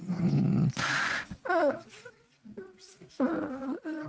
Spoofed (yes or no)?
yes